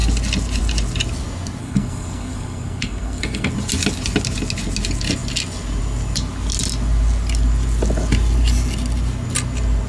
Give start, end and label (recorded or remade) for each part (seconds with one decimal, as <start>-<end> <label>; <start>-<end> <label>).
0.0-1.6 recorded; 1.6-3.5 remade; 3.5-9.9 recorded